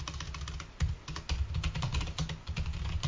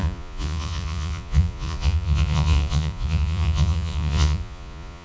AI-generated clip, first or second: second